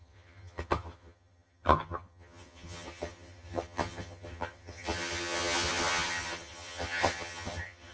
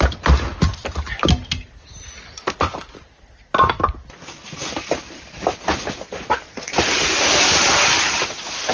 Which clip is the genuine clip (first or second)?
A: second